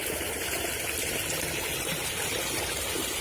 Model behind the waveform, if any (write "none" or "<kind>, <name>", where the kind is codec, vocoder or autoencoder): none